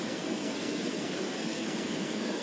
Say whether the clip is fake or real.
fake